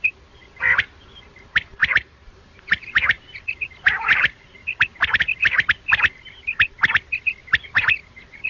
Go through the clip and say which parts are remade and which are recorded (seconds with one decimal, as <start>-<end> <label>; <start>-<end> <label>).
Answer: 0.0-1.8 recorded; 1.8-4.9 remade; 4.9-8.5 recorded